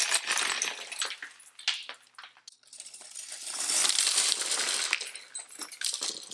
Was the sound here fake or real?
real